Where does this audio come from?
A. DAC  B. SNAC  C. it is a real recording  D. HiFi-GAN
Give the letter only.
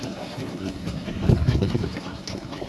B